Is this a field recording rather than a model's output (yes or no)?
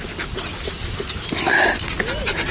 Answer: yes